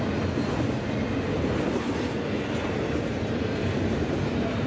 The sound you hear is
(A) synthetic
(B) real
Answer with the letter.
B